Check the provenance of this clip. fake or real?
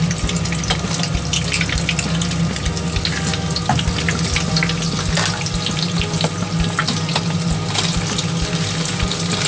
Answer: real